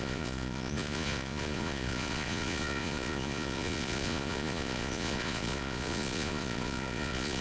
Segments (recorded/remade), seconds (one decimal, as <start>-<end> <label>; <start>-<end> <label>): 0.0-7.4 remade